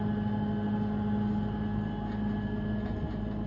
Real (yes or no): yes